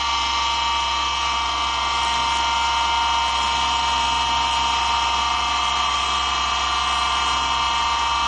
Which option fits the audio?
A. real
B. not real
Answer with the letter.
A